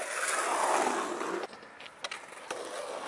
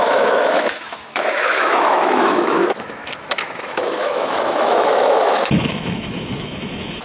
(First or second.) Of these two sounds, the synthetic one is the second